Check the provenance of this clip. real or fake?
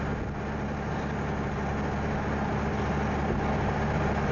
real